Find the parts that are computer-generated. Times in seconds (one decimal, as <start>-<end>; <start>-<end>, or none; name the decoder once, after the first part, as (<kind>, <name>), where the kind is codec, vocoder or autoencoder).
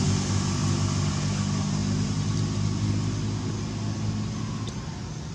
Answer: none